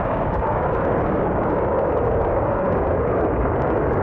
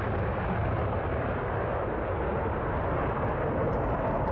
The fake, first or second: first